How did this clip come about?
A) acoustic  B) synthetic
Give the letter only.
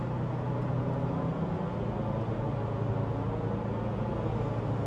A